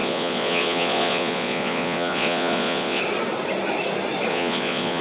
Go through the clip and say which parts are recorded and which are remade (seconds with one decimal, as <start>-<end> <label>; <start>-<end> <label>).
0.0-3.0 remade; 3.0-4.3 recorded; 4.3-5.0 remade